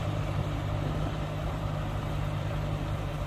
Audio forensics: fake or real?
fake